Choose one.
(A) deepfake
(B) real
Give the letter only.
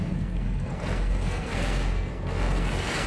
A